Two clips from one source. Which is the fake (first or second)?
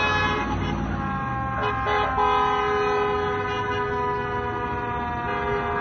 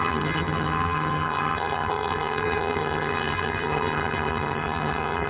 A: second